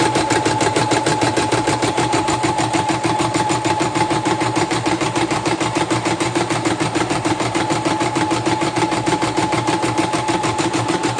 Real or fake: fake